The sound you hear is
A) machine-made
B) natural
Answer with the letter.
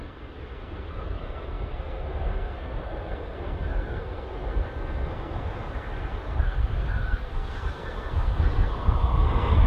A